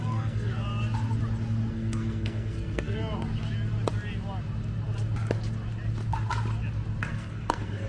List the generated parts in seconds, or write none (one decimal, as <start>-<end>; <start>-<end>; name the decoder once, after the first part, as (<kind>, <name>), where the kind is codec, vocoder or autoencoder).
0.0-0.5 (codec, SNAC); 1.7-3.0; 7.0-7.9